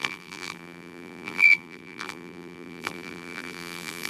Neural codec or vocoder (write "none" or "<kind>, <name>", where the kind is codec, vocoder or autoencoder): vocoder, BigVGAN v2